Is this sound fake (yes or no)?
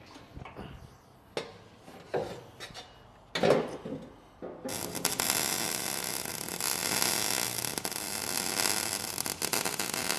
no